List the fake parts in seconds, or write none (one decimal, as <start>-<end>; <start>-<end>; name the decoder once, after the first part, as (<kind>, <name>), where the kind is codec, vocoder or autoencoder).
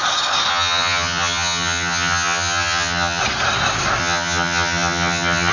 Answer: 0.5-3.2 (vocoder, HiFi-GAN); 4.0-5.5